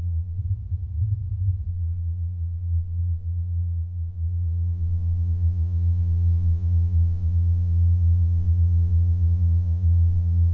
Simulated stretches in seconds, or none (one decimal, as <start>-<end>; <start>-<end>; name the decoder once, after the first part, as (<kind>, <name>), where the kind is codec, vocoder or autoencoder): 0.0-0.4 (vocoder, Vocos); 1.7-10.5